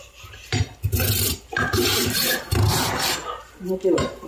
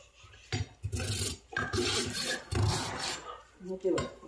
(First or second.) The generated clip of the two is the first